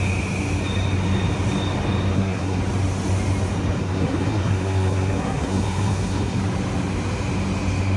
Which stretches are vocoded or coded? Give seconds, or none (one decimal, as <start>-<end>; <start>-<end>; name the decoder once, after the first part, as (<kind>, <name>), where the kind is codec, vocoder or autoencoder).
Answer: 2.1-2.6 (codec, SNAC); 3.8-6.4